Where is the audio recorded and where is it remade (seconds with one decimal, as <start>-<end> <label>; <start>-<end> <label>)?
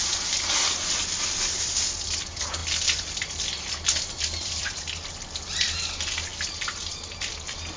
0.0-7.8 recorded